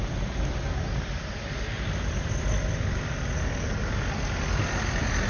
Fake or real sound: real